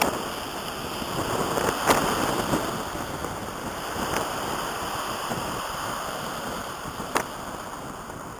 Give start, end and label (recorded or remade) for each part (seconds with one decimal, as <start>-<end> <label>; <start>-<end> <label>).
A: 0.0-3.4 recorded; 3.4-7.2 remade; 7.2-8.4 recorded